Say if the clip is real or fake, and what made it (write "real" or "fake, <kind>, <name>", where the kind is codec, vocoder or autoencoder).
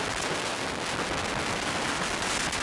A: real